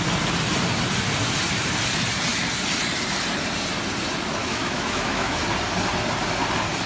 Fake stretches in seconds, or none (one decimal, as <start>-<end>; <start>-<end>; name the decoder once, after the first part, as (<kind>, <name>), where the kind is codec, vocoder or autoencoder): 4.4-5.4 (autoencoder, DAC-VAE)